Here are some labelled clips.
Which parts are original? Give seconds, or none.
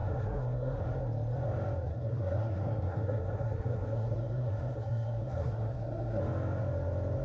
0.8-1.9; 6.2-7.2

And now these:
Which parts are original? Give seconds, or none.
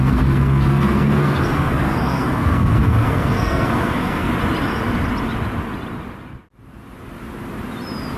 4.3-8.2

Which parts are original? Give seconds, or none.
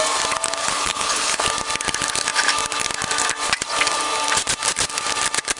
0.0-0.6; 1.4-5.6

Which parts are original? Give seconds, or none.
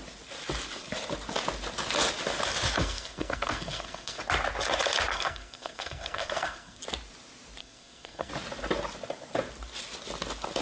0.0-2.8; 4.2-5.1; 6.8-7.6; 8.3-10.6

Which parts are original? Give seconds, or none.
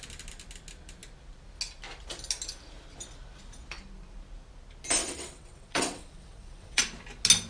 0.0-5.0; 6.8-7.5